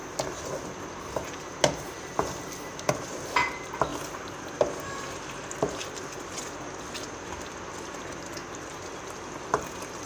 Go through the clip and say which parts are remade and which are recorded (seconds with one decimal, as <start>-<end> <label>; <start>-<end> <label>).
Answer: 0.0-10.1 recorded